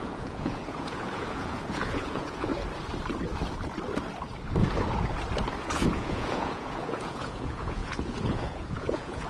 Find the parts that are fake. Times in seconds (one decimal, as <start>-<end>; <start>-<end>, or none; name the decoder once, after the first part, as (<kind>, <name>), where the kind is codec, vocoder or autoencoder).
0.0-2.5 (vocoder, Vocos); 5.6-9.3